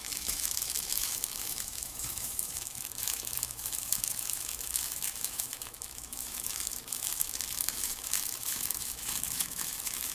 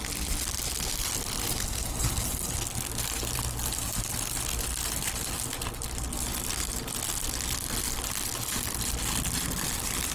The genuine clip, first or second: second